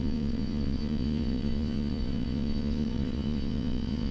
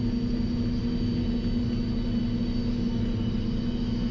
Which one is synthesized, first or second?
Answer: first